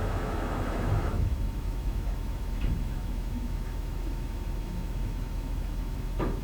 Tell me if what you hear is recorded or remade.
remade